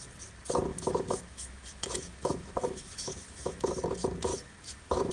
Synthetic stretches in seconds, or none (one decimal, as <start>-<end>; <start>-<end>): 0.7-3.7; 4.3-5.1